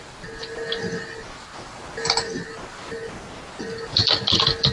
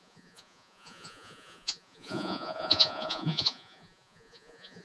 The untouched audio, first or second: first